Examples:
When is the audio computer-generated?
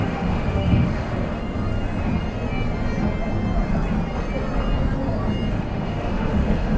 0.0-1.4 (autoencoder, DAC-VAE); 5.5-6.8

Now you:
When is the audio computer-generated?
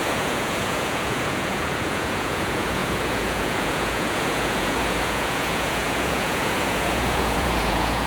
0.0-8.1 (vocoder, Vocos)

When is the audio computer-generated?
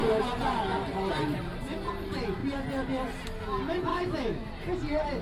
3.9-4.5 (autoencoder, DAC-VAE)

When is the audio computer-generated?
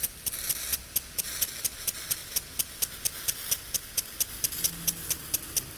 none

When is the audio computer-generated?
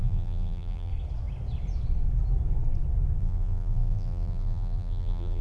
0.0-0.9 (vocoder, BigVGAN v2); 3.2-5.4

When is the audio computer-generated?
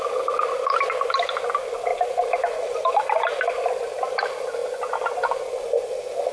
none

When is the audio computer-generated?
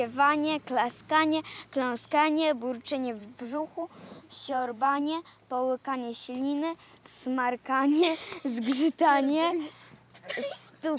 3.2-5.0 (vocoder, Vocos)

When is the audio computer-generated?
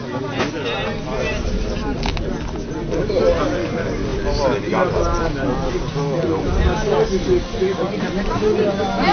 1.3-1.8 (vocoder, BigVGAN v2)